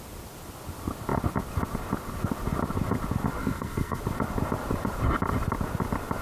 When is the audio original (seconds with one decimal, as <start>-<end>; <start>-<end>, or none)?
0.0-3.4; 4.0-6.2